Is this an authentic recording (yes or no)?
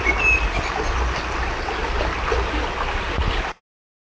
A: yes